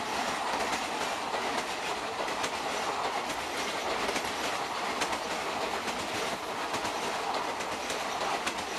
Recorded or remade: recorded